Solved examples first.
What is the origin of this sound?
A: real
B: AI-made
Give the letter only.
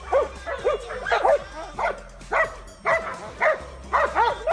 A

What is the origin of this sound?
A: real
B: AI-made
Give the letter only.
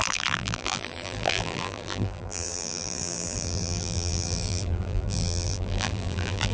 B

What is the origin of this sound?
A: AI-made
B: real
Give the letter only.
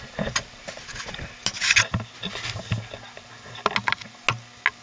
B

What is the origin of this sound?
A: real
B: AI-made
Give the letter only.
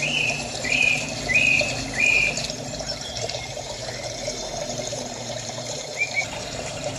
B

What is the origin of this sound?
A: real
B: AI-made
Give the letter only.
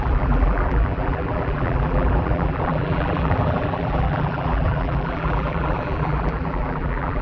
B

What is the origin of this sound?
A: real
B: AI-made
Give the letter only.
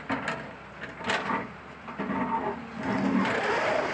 A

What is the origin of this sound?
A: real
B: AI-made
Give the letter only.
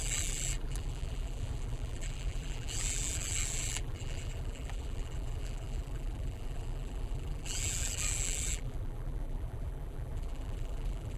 B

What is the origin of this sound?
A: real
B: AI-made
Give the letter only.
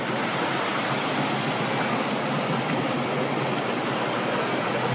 A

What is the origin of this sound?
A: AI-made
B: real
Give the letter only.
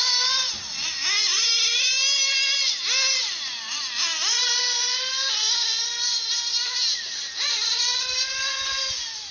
B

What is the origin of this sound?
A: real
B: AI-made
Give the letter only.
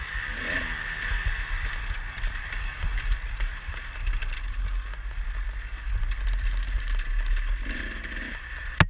A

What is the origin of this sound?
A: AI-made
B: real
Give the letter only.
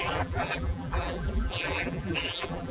A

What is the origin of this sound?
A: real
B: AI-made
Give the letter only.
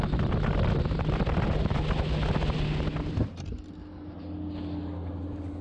A